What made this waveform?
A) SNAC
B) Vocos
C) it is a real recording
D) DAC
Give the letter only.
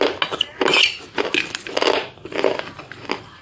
C